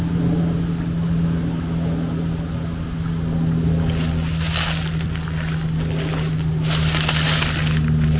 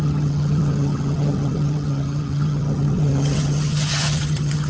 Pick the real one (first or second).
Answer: first